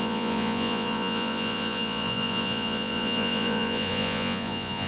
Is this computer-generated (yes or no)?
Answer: yes